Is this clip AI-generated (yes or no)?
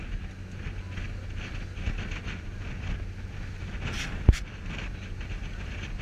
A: no